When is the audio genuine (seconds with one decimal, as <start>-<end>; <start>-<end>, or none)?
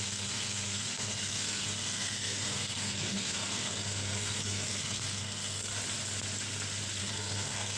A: 5.7-7.0